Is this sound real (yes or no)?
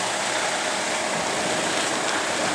yes